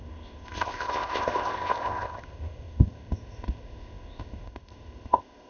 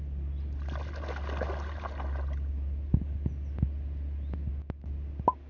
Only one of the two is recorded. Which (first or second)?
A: second